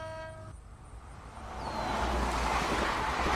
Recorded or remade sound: recorded